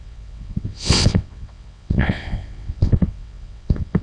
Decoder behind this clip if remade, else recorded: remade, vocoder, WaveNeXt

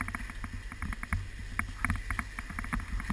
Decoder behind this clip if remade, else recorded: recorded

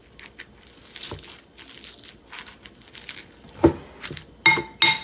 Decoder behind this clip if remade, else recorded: recorded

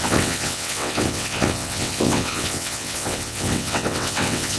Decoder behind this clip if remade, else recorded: remade, vocoder, WaveNeXt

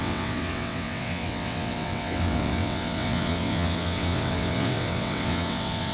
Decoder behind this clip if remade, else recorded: remade, vocoder, WaveNeXt